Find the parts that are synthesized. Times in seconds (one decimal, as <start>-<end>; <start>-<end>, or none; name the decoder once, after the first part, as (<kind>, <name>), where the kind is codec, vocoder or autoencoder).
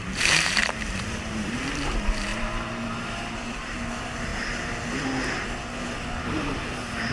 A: 0.0-4.3 (vocoder, BigVGAN v2)